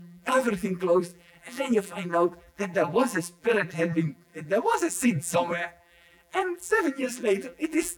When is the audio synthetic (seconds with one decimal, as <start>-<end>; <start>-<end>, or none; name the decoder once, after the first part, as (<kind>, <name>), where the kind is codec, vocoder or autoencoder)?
0.0-8.0 (vocoder, BigVGAN v2)